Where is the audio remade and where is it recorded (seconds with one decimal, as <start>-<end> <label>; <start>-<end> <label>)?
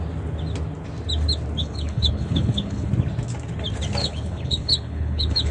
0.0-1.6 recorded; 1.6-2.9 remade; 2.9-4.0 recorded; 4.0-5.5 remade